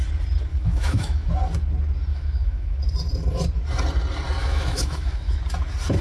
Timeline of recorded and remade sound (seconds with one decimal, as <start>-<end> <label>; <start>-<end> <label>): 0.0-0.5 recorded; 0.5-1.3 remade; 1.3-2.1 recorded; 2.1-2.8 remade; 2.8-4.4 recorded; 4.4-5.4 remade; 5.4-6.0 recorded

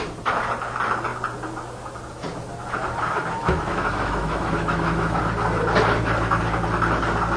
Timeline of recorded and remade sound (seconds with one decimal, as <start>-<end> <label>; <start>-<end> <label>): 0.0-3.4 recorded; 3.4-5.2 remade; 5.2-7.4 recorded

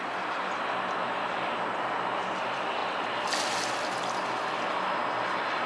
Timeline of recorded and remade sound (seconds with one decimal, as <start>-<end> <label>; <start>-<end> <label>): 0.0-5.7 recorded

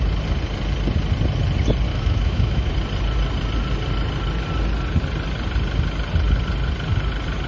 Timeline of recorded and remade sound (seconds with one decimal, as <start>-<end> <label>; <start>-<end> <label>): 0.0-1.9 recorded; 1.9-2.7 remade; 2.7-7.5 recorded

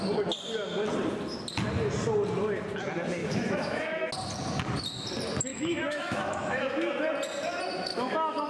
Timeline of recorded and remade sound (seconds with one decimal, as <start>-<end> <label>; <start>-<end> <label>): 0.0-3.2 recorded; 3.2-4.1 remade; 4.1-5.5 recorded; 5.5-7.1 remade; 7.1-7.9 recorded; 7.9-8.5 remade